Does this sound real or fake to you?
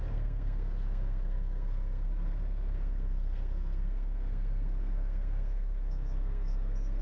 fake